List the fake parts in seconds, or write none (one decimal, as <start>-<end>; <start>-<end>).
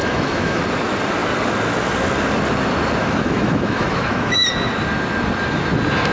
0.0-0.6; 3.0-4.5